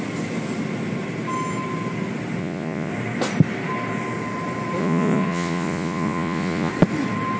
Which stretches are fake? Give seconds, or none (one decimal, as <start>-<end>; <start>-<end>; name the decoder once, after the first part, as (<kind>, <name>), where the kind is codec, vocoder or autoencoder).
2.4-2.9 (vocoder, Vocos); 4.8-6.7